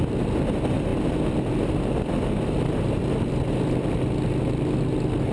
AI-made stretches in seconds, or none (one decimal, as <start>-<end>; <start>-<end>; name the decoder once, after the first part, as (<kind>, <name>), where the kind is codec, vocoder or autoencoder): none